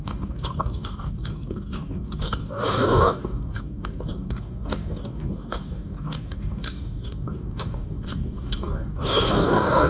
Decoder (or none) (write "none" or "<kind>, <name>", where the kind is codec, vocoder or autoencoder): codec, DAC